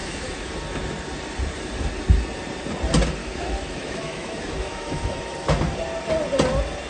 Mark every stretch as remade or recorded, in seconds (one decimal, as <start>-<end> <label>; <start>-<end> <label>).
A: 0.0-0.5 remade; 0.5-3.2 recorded; 3.2-5.2 remade; 5.2-6.9 recorded